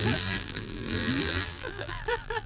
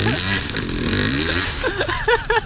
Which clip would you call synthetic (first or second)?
first